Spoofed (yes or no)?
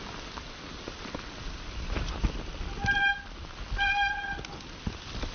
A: no